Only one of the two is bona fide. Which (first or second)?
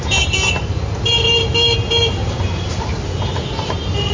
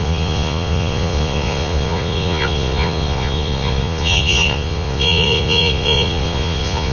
first